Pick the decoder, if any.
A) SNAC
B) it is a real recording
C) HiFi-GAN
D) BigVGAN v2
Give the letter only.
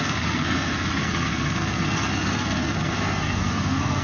A